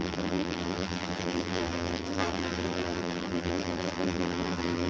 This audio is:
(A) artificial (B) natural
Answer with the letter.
A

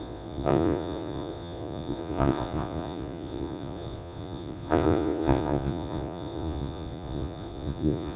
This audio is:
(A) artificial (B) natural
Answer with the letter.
A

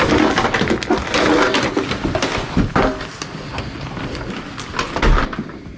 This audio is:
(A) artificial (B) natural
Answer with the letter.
B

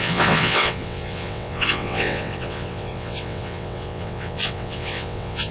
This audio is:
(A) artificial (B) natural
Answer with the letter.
A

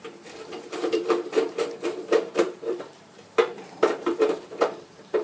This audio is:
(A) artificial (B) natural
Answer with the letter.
A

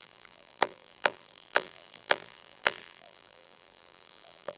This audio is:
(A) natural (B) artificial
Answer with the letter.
B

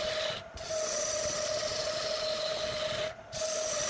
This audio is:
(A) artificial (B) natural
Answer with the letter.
B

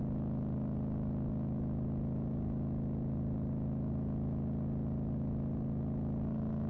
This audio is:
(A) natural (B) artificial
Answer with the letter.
A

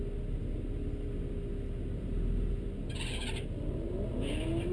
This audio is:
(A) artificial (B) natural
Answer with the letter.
B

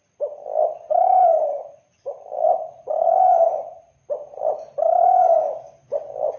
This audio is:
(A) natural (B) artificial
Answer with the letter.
A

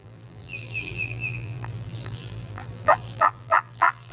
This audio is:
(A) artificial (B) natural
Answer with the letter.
A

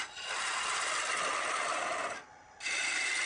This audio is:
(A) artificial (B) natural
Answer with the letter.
B